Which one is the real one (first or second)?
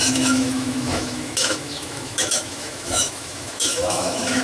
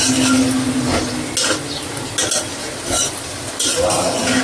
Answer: second